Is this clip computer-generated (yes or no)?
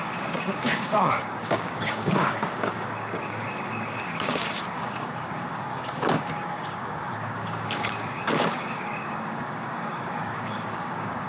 yes